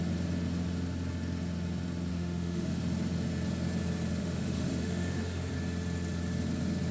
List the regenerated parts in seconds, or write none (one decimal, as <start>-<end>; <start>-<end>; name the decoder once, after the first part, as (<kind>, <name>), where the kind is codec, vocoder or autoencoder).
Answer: 2.1-2.8 (autoencoder, DAC-VAE); 4.2-5.5